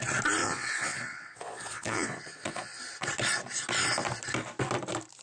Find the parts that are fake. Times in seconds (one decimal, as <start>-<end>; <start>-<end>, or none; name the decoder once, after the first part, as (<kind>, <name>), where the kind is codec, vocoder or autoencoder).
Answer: 0.4-2.8 (vocoder, Vocos)